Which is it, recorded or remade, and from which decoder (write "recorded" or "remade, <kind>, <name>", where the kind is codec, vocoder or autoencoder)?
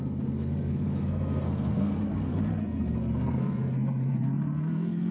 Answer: remade, codec, SNAC